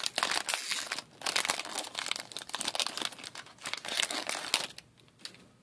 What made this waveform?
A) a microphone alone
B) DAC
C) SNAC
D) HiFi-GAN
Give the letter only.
A